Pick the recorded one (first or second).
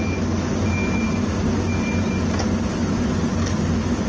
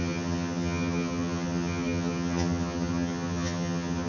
first